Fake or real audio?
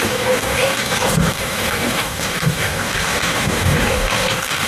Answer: fake